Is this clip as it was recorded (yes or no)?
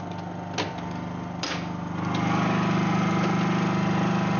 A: yes